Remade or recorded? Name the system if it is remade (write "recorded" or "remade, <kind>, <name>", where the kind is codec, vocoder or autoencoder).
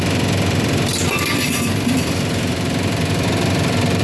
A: remade, vocoder, BigVGAN v2